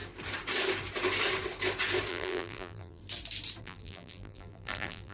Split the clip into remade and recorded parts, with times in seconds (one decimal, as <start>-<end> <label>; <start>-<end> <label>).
0.0-2.1 recorded; 2.1-3.0 remade; 3.0-3.6 recorded; 3.6-5.1 remade